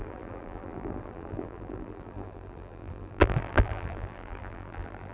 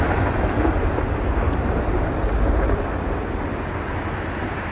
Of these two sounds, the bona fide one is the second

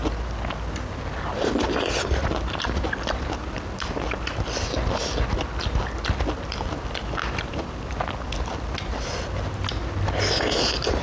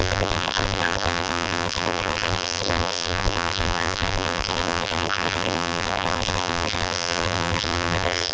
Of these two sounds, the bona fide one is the first